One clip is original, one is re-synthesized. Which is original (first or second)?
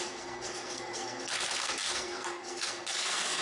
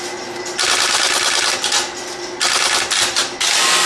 second